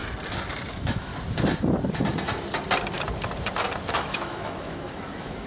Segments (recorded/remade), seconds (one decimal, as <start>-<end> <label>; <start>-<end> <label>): 0.0-0.7 recorded; 0.7-1.1 remade; 1.1-3.9 recorded; 3.9-5.5 remade